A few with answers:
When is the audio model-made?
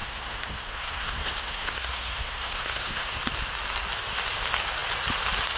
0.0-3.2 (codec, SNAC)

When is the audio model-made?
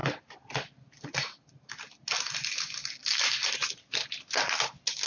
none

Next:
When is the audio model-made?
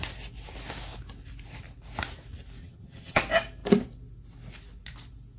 2.6-3.2 (vocoder, HiFi-GAN)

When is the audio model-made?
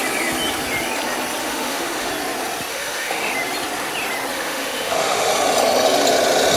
1.4-2.1 (autoencoder, DAC-VAE); 2.7-3.3; 4.3-5.3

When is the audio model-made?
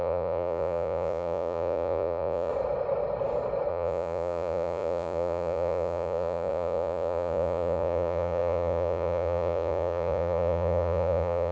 0.0-2.5 (vocoder, Vocos); 3.7-11.5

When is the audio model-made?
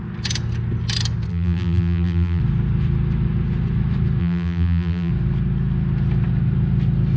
1.3-2.4 (vocoder, BigVGAN v2); 4.2-5.1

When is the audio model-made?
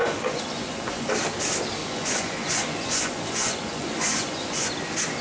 0.0-1.1 (vocoder, Vocos); 1.8-4.7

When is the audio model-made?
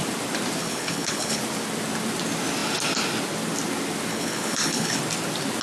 0.6-1.4 (codec, HILCodec); 4.1-5.0